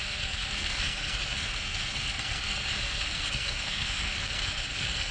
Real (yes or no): no